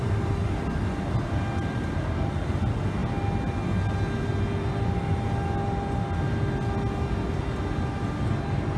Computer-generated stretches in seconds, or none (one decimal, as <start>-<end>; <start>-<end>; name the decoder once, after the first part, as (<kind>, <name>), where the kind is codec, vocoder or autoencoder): none